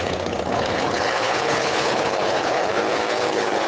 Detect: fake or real fake